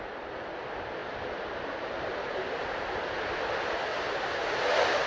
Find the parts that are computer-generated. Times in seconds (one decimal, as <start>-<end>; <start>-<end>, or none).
none